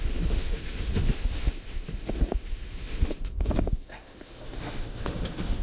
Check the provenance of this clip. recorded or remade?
remade